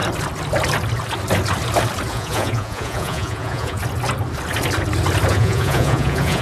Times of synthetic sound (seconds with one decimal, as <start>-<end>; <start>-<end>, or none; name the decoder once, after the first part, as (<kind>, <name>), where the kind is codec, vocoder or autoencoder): 2.1-3.8 (vocoder, Vocos); 5.3-6.4